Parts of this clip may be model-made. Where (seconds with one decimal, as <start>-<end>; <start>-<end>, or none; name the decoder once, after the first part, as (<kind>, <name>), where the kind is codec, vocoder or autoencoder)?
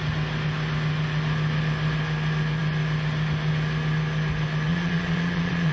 4.7-5.7 (vocoder, Vocos)